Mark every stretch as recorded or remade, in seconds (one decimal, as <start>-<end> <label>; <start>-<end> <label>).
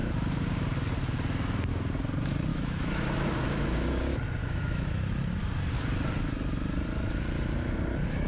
0.0-2.5 recorded; 2.5-4.0 remade; 4.0-4.4 recorded; 4.4-5.4 remade; 5.4-8.3 recorded